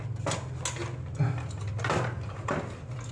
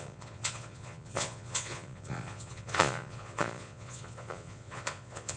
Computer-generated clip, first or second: second